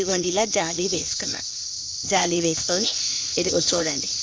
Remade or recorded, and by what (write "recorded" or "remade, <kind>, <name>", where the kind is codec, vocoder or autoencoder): remade, codec, ZipCodec